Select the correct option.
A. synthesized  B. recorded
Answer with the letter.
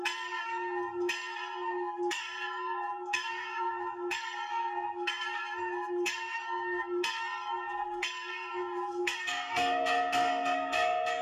A